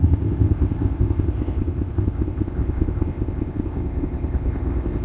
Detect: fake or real fake